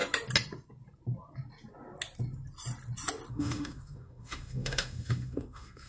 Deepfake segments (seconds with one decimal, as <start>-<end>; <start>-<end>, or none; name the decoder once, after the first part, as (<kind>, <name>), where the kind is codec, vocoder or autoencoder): 3.3-5.9 (autoencoder, DAC-VAE)